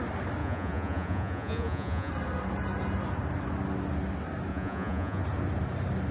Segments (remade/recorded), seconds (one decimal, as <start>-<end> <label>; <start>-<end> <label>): 0.0-0.4 recorded; 0.4-2.1 remade; 2.1-4.5 recorded; 4.5-5.2 remade; 5.2-6.1 recorded